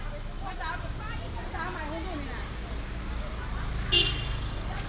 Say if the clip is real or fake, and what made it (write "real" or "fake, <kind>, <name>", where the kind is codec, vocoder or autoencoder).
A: real